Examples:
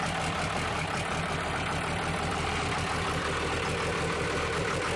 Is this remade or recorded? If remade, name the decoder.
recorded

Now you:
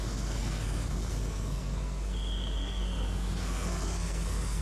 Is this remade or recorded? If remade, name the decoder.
remade, codec, SNAC